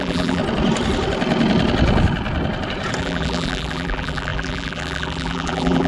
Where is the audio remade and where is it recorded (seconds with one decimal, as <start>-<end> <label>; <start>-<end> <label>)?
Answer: 0.0-0.4 remade; 0.4-3.0 recorded; 3.0-5.9 remade